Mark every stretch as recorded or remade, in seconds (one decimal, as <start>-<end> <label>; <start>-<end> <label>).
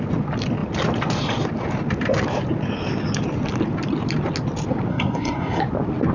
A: 0.0-4.9 recorded; 4.9-5.6 remade; 5.6-6.1 recorded